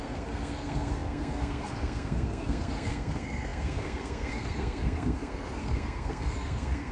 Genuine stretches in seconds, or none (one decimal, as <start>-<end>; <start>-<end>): none